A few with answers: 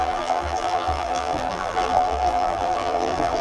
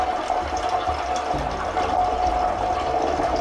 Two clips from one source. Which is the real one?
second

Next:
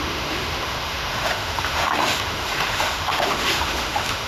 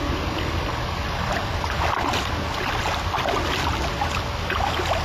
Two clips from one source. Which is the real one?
second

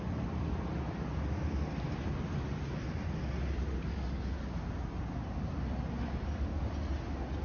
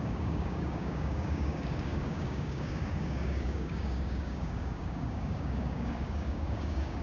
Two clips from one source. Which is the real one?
first